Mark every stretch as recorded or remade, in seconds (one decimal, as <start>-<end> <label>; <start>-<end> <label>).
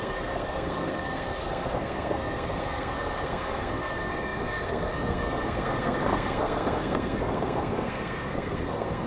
0.0-9.1 remade